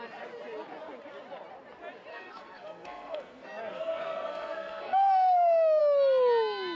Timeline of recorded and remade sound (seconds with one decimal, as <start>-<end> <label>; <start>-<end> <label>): 0.0-2.1 recorded; 2.1-5.8 remade; 5.8-6.8 recorded